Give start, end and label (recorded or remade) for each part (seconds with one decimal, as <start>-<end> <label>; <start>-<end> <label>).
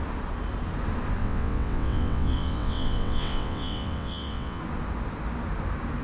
0.0-1.2 recorded; 1.2-4.6 remade; 4.6-6.0 recorded